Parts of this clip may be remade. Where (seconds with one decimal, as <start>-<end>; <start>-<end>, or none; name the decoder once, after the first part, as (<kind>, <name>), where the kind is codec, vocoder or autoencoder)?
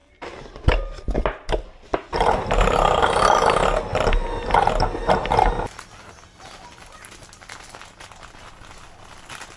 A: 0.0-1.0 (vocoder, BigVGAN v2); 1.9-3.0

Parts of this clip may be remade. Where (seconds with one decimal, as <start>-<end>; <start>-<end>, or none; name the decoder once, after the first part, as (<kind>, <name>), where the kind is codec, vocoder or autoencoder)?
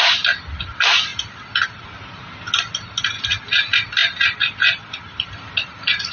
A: none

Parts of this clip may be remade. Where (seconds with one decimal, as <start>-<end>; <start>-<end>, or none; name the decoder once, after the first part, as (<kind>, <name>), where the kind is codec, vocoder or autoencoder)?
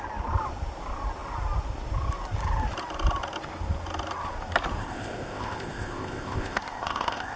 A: 4.8-7.4 (codec, ZipCodec)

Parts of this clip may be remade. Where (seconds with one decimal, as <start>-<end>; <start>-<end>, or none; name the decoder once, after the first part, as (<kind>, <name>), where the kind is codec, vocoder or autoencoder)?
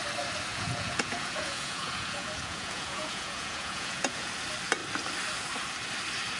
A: 0.5-4.3 (vocoder, Vocos)